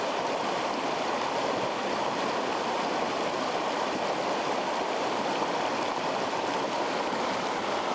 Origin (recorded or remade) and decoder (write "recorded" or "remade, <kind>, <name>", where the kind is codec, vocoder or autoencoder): recorded